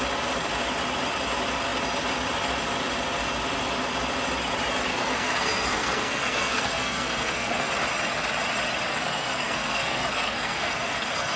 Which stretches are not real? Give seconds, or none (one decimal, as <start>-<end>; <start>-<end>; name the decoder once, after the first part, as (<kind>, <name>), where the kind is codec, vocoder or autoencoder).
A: 4.9-7.7 (codec, SNAC); 8.9-11.4